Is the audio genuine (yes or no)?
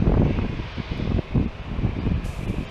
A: yes